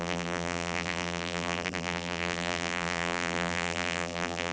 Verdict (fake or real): fake